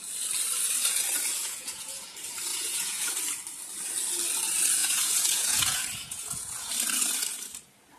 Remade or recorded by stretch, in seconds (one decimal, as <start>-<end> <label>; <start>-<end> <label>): 0.0-1.4 recorded; 1.4-2.0 remade; 2.0-2.5 recorded; 2.5-3.1 remade; 3.1-4.8 recorded; 4.8-6.7 remade; 6.7-8.0 recorded